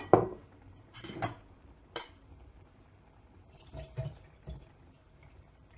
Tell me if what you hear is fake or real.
fake